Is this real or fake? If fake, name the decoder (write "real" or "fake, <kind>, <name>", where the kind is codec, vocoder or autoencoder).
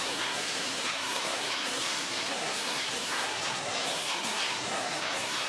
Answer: fake, codec, SNAC